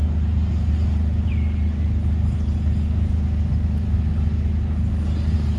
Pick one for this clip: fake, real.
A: real